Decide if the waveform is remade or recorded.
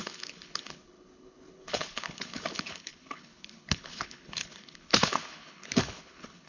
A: remade